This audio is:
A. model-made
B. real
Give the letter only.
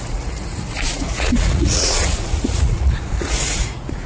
A